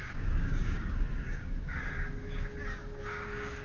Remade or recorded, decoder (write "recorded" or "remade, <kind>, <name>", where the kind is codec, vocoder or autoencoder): remade, codec, DAC